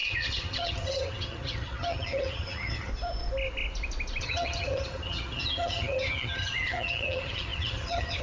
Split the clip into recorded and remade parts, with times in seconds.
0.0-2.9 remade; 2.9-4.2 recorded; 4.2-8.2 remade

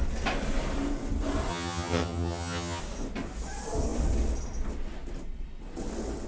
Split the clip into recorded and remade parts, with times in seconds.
0.0-1.5 recorded; 1.5-2.8 remade; 2.8-6.3 recorded

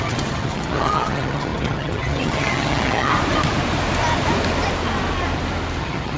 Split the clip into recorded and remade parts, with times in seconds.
0.0-3.1 remade; 3.1-5.8 recorded; 5.8-6.2 remade

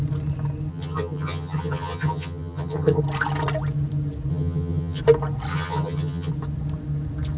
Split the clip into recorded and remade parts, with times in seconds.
0.0-0.7 recorded; 0.7-3.0 remade; 3.0-4.3 recorded; 4.3-5.0 remade; 5.0-5.5 recorded; 5.5-6.3 remade; 6.3-7.4 recorded

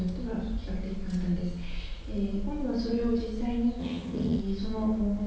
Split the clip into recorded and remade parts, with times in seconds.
0.0-3.8 recorded; 3.8-4.4 remade; 4.4-5.3 recorded

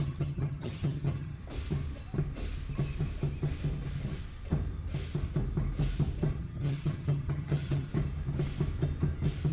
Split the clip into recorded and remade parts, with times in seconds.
0.0-1.4 remade; 1.4-6.4 recorded; 6.4-7.9 remade; 7.9-9.5 recorded

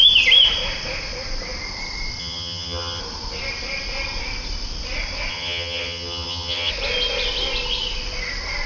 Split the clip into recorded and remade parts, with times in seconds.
0.0-2.2 recorded; 2.2-3.0 remade; 3.0-5.3 recorded; 5.3-6.7 remade; 6.7-8.7 recorded

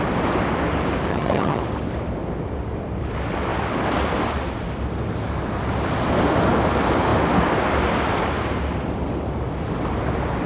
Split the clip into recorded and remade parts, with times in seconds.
0.0-1.1 recorded; 1.1-1.6 remade; 1.6-10.5 recorded